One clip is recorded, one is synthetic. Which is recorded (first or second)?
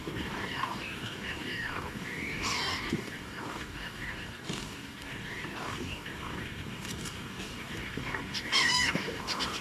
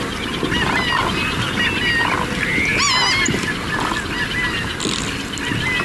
second